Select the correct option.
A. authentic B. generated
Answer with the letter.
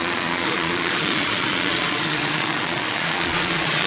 B